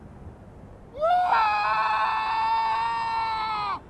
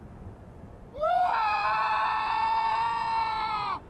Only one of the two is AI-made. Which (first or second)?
second